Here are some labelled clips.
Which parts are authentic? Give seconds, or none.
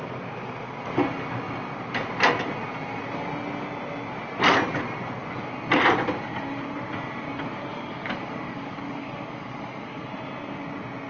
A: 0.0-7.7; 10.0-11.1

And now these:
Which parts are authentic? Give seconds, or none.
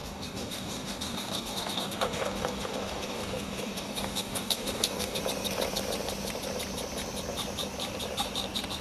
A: 5.2-8.8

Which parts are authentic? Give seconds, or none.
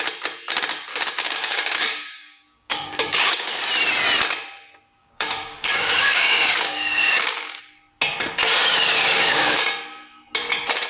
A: 0.0-0.9; 3.6-5.0; 7.6-8.6; 9.7-10.9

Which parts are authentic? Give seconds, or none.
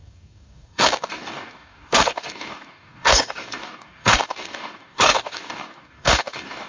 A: none